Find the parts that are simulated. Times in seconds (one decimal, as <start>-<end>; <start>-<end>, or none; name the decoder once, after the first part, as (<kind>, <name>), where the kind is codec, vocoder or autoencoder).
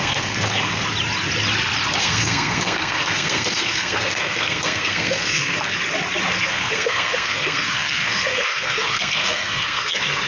0.0-0.8 (codec, SNAC); 2.0-5.8; 6.4-10.3